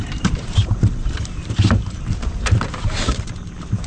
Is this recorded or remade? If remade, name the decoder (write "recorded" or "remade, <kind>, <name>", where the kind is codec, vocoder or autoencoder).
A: remade, vocoder, BigVGAN v2